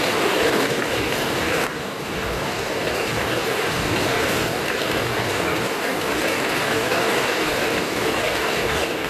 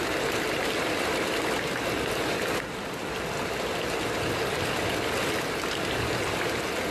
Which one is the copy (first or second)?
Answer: first